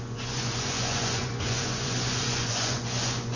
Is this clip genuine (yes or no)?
no